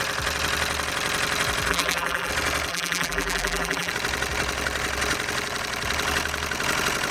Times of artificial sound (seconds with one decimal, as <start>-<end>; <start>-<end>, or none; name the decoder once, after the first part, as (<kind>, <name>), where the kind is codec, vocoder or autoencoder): 1.7-2.3 (vocoder, BigVGAN v2); 2.7-3.9